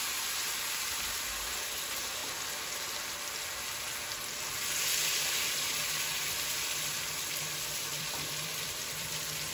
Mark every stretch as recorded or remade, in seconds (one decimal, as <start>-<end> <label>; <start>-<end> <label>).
0.0-2.2 remade; 2.2-5.5 recorded; 5.5-9.5 remade